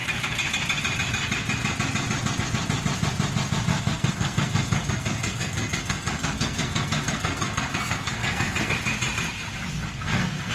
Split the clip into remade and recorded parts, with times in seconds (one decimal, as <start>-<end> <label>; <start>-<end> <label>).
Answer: 0.0-3.7 recorded; 3.7-8.7 remade; 8.7-9.7 recorded; 9.7-10.5 remade